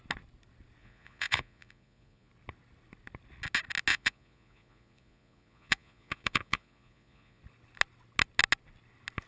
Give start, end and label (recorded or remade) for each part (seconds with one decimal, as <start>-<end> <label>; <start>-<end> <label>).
0.0-0.8 recorded; 0.8-2.3 remade; 2.3-3.9 recorded; 3.9-7.4 remade; 7.4-9.3 recorded